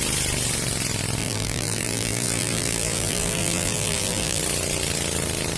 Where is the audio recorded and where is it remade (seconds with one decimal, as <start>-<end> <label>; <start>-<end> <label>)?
0.0-1.2 recorded; 1.2-4.4 remade; 4.4-5.6 recorded